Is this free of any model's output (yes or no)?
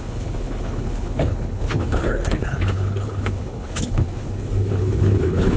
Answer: no